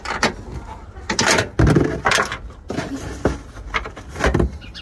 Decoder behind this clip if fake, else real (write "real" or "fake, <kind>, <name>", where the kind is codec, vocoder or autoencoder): real